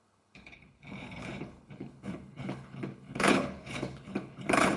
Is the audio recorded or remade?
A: remade